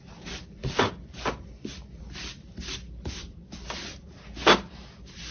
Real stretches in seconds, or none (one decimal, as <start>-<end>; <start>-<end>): 0.0-0.6; 3.8-5.3